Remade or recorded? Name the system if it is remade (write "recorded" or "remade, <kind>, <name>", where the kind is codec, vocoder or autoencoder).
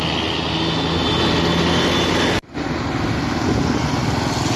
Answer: recorded